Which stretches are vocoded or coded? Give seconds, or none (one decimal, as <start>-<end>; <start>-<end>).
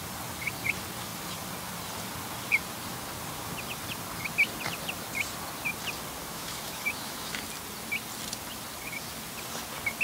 6.2-7.4